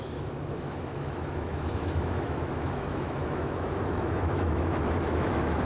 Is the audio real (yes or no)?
no